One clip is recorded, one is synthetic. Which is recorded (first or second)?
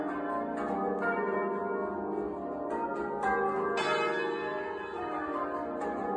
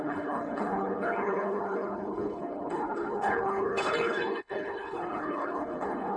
first